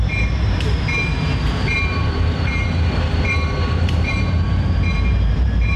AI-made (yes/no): yes